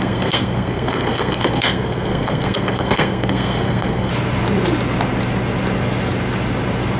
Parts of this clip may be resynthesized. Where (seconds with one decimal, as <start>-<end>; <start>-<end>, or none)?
0.0-4.1